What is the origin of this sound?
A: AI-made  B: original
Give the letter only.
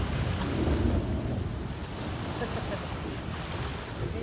B